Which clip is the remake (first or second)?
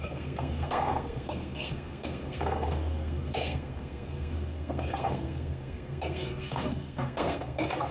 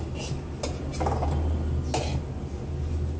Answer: first